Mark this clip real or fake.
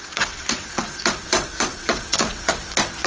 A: fake